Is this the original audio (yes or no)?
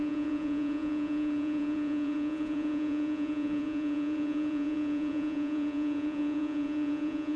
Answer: no